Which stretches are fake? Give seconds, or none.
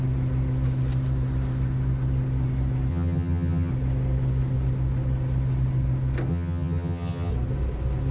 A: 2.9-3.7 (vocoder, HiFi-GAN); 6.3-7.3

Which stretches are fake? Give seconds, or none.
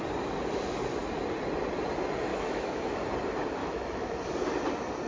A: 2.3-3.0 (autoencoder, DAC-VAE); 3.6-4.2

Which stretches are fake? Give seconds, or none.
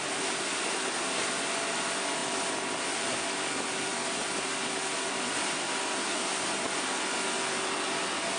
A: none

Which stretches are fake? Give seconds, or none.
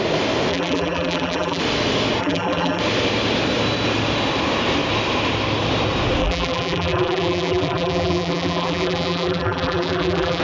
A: 0.5-1.6 (vocoder, BigVGAN v2); 2.2-2.8; 6.2-10.4